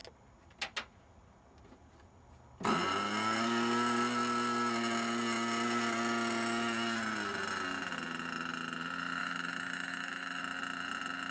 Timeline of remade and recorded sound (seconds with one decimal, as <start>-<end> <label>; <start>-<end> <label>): 0.0-9.2 recorded; 9.2-10.4 remade; 10.4-11.3 recorded